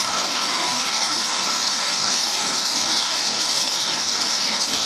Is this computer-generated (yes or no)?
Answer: yes